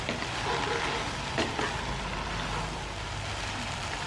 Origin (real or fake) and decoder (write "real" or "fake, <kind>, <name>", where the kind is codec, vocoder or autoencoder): real